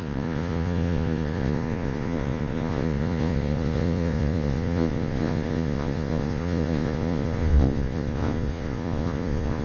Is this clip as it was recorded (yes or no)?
no